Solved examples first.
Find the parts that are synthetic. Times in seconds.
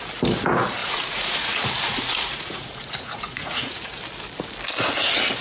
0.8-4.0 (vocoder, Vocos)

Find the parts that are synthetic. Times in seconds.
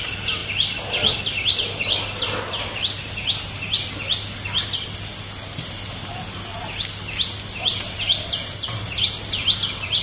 none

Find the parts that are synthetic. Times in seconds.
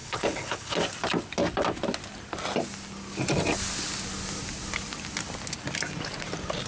0.0-0.8 (codec, HILCodec)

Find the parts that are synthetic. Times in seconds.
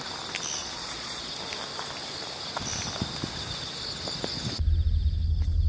0.6-1.3 (vocoder, Vocos)